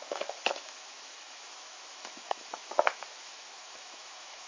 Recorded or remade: remade